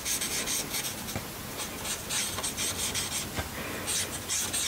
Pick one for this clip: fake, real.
real